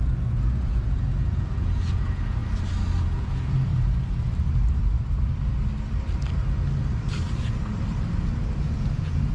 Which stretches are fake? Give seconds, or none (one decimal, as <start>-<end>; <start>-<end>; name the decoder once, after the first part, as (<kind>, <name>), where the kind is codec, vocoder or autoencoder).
0.0-2.4 (vocoder, Vocos); 3.0-3.7; 8.6-9.3